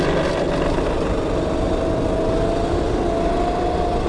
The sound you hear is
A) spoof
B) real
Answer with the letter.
B